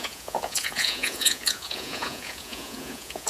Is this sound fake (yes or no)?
yes